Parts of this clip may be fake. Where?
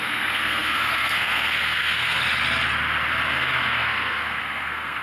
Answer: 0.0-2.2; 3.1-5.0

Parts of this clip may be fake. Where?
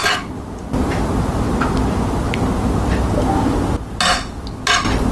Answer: none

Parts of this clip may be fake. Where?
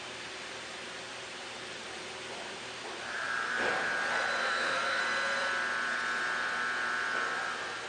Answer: 4.4-5.0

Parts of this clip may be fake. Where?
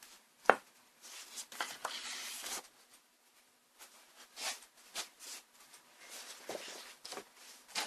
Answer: none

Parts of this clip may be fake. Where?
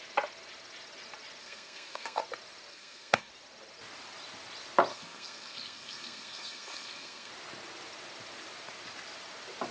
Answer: 1.4-2.2; 2.7-3.3; 4.9-7.3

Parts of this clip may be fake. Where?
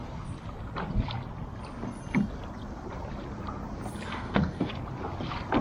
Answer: 4.1-4.7